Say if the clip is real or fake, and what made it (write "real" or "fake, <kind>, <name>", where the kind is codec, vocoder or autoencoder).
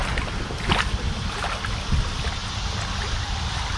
real